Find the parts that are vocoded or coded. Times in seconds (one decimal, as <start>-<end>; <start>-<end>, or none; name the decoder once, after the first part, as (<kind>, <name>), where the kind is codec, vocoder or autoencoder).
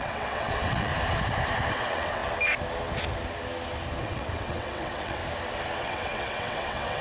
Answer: 0.0-0.9 (vocoder, WaveNeXt); 1.7-2.2; 4.0-5.2; 5.8-7.0